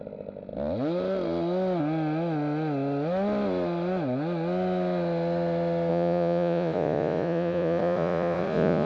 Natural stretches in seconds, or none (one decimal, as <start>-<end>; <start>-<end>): 0.0-5.9